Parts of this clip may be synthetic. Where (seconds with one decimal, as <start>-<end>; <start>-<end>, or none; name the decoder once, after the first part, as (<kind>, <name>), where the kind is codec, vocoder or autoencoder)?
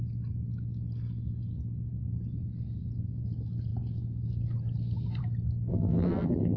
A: 5.7-6.6 (vocoder, BigVGAN v2)